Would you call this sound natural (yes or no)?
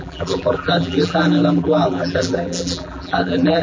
no